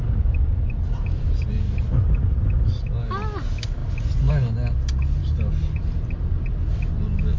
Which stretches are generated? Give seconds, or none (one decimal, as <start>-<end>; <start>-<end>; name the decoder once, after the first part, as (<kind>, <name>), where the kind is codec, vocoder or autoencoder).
5.2-5.8 (vocoder, BigVGAN v2)